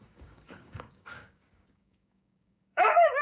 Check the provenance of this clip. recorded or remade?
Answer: remade